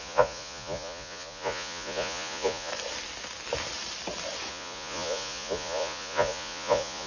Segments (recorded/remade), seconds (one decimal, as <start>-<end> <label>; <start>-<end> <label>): 0.0-2.7 remade; 2.7-4.5 recorded; 4.5-7.1 remade